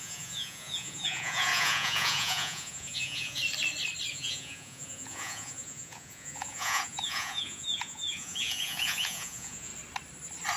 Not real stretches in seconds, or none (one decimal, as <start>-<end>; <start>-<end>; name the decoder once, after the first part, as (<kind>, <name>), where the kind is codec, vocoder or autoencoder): 0.0-3.4 (vocoder, Vocos); 4.1-9.7

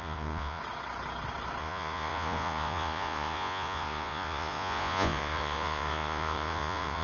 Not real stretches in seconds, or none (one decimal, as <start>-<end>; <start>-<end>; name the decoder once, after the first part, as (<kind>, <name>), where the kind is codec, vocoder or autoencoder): 0.0-0.6 (vocoder, Vocos); 1.6-7.0

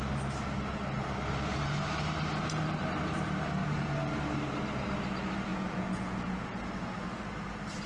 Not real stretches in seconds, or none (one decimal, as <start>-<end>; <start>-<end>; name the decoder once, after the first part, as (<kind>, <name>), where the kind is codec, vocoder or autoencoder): 5.5-7.2 (vocoder, Vocos)

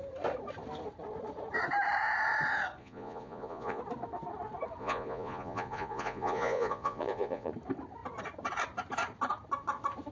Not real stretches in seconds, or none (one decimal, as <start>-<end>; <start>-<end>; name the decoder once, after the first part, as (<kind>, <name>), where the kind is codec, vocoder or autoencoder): 2.8-3.8 (vocoder, Vocos); 4.8-7.5

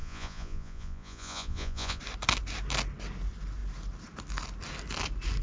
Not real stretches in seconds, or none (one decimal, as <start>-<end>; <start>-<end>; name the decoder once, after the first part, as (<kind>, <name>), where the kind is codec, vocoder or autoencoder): 0.0-2.0 (vocoder, Vocos)

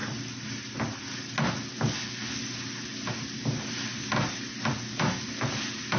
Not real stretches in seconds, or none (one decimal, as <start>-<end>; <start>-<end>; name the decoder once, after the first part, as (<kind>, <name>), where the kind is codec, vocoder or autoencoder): none

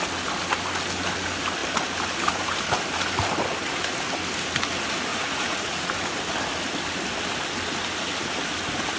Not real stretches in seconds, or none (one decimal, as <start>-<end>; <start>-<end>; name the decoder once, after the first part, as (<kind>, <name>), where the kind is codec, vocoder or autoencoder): 5.1-6.1 (vocoder, Vocos)

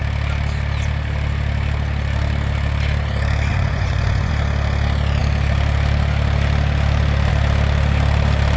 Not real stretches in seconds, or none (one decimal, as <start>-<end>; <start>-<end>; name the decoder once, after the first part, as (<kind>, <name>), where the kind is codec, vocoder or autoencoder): 3.5-4.3 (vocoder, Vocos)